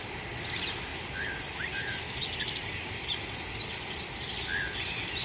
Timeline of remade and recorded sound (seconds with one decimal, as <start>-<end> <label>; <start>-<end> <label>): 0.0-5.2 recorded